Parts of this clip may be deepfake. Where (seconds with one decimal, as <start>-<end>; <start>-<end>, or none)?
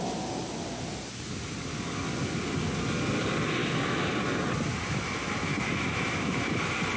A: 3.6-4.1; 5.4-6.6